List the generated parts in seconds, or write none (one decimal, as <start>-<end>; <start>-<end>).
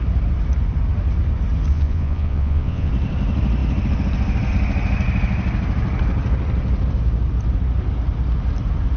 1.7-2.9